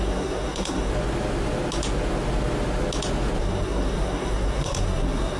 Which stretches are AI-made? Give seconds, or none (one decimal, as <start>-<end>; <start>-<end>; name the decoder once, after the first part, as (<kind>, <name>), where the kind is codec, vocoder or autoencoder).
0.0-0.9 (codec, SNAC); 3.4-5.4